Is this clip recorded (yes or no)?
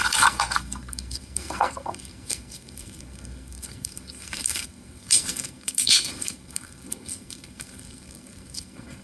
no